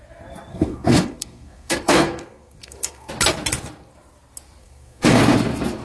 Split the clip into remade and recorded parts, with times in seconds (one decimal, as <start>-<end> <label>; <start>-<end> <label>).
0.0-0.5 recorded; 0.5-3.1 remade; 3.1-4.6 recorded; 4.6-5.2 remade; 5.2-5.8 recorded